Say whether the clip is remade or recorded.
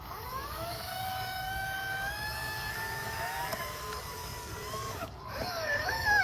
remade